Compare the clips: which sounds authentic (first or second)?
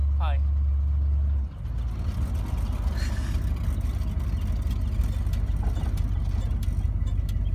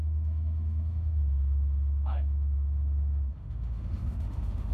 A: first